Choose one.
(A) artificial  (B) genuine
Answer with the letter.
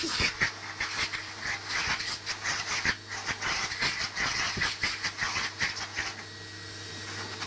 B